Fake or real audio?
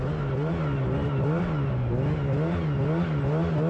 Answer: real